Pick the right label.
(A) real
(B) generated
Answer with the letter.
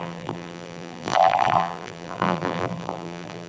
B